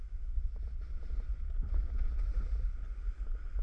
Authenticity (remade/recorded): recorded